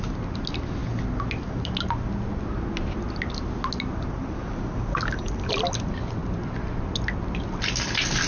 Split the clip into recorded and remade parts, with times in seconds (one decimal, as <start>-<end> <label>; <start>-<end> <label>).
0.0-8.3 recorded